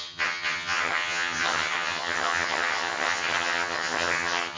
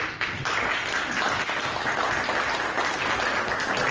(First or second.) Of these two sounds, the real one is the second